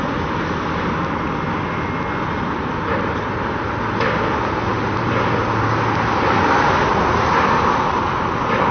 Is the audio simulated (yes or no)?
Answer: no